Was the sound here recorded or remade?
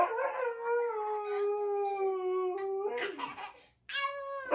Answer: recorded